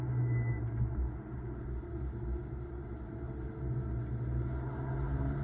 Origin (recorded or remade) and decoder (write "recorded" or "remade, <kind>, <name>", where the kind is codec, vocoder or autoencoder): recorded